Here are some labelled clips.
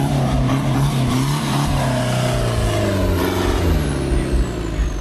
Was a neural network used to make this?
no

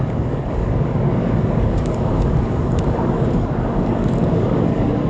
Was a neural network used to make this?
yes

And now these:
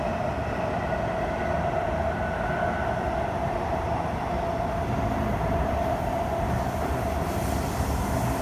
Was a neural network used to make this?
no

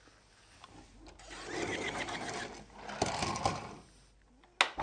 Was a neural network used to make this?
no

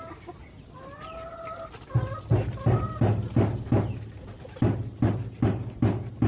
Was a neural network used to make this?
no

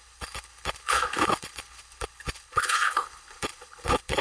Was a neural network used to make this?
yes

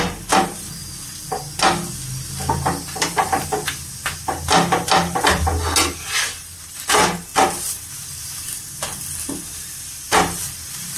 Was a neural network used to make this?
no